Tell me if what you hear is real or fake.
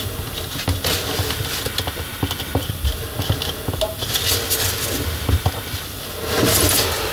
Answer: real